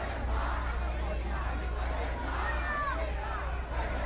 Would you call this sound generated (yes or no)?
no